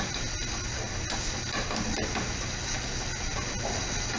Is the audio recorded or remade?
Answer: recorded